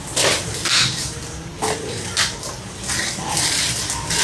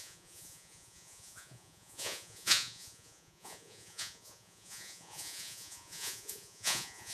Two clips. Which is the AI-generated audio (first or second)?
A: second